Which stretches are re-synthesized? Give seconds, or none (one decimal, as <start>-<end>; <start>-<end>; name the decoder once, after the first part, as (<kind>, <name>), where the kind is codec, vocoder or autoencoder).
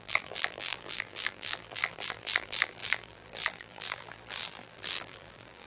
0.0-5.7 (vocoder, BigVGAN v2)